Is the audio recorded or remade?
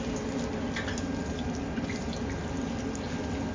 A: recorded